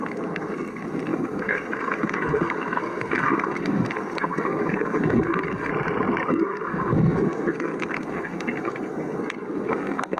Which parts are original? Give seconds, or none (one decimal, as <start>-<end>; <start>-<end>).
5.7-6.3